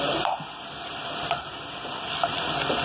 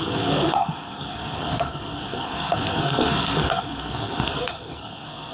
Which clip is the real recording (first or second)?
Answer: first